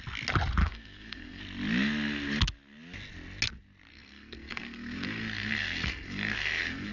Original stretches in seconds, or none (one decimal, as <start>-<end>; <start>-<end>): 0.0-0.6; 1.4-3.9